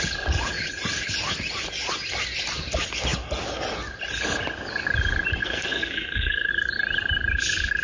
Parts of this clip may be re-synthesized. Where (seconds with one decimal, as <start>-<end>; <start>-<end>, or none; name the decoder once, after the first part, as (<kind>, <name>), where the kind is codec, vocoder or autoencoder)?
5.4-6.5 (codec, SNAC)